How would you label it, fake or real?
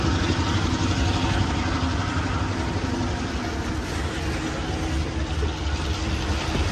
real